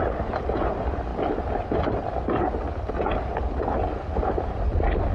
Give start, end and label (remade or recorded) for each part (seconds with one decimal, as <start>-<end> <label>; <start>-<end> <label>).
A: 0.0-5.1 recorded